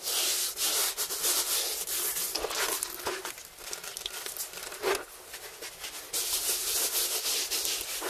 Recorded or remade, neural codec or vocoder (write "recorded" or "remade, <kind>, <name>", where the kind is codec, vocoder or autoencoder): recorded